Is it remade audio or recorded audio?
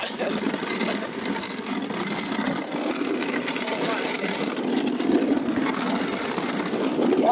recorded